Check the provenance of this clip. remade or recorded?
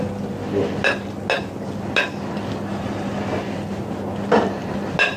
recorded